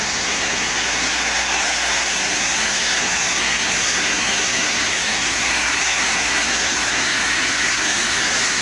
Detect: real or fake fake